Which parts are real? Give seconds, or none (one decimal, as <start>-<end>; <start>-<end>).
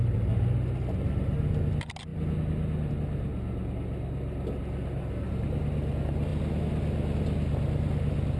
0.0-8.4